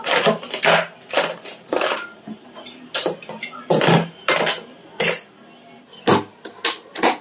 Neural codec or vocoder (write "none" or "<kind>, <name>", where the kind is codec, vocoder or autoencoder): none